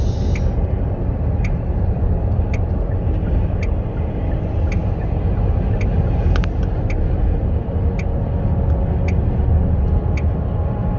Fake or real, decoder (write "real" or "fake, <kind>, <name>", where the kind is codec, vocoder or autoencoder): real